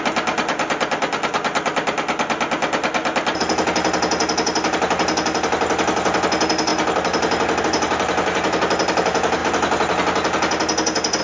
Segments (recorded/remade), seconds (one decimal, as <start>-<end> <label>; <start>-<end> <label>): 0.0-11.2 recorded